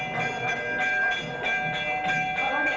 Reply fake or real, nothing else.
real